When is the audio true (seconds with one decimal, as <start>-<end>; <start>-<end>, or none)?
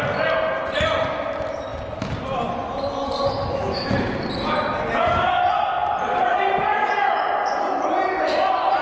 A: 0.0-5.8; 6.9-8.8